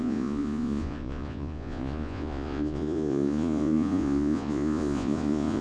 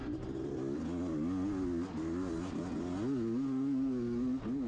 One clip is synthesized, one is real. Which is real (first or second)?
second